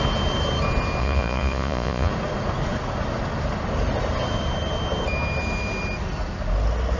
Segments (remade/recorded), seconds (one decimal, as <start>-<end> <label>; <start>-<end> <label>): 0.0-1.0 recorded; 1.0-2.1 remade; 2.1-7.0 recorded